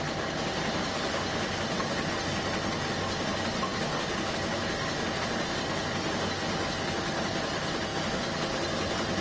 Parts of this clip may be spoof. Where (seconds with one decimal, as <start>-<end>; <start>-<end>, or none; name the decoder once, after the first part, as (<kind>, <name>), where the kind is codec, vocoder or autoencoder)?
none